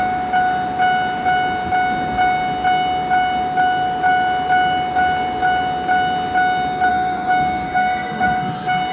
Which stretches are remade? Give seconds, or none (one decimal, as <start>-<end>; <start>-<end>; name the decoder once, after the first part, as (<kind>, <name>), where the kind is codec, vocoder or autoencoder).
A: 6.9-8.9 (codec, SNAC)